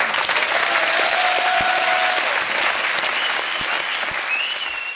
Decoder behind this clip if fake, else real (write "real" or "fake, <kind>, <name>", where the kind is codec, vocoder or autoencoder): real